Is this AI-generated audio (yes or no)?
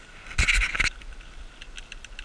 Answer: no